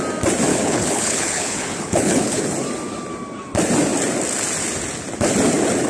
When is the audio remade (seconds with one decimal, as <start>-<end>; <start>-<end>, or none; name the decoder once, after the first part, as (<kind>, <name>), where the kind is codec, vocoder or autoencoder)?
0.5-2.4 (codec, HILCodec)